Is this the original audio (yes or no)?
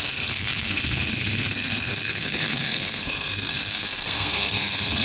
no